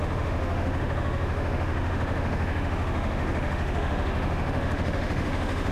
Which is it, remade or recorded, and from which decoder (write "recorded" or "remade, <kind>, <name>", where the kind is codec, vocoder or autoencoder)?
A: remade, autoencoder, DAC-VAE